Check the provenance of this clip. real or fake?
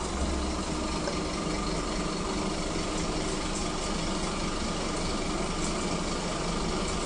real